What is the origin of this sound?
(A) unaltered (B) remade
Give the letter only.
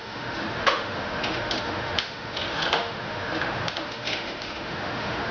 B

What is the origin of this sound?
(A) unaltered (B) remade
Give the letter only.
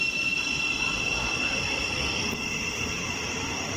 B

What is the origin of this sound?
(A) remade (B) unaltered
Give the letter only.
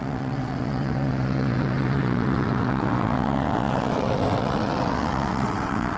A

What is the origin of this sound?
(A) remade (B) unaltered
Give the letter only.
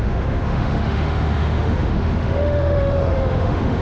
A